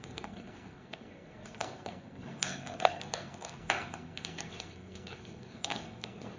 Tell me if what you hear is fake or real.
fake